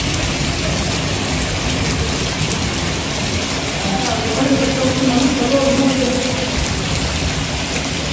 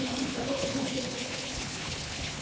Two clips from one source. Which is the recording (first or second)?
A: first